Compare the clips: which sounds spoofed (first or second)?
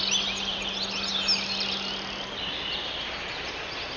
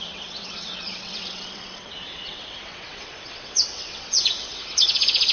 second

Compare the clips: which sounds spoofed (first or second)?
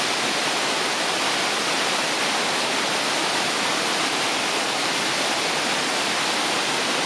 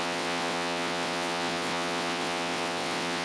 second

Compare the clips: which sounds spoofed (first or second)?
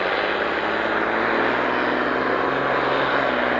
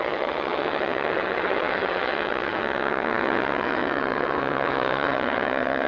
second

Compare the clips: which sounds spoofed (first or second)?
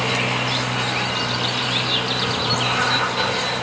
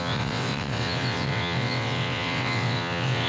second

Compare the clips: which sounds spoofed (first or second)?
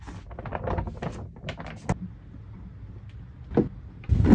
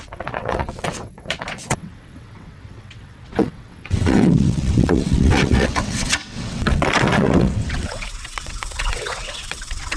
second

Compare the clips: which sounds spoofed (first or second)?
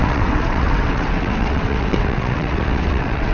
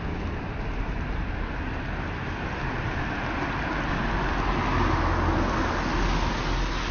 first